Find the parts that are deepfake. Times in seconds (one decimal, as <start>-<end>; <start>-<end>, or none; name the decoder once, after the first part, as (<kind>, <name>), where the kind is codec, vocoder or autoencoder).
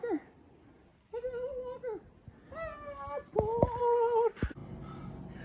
none